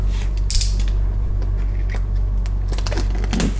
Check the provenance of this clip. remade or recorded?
recorded